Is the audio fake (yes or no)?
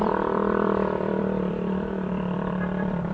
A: yes